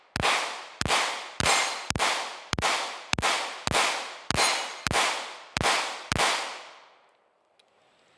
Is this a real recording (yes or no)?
yes